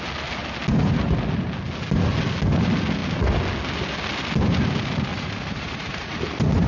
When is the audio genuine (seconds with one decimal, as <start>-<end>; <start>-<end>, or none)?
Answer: 0.0-5.1; 6.2-6.7